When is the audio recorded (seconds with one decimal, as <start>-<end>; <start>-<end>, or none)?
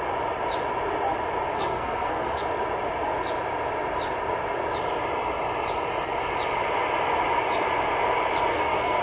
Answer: 0.0-1.5; 2.4-8.5